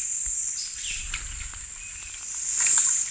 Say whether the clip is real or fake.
real